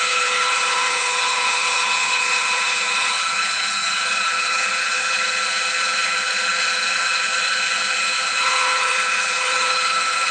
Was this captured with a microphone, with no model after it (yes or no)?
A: no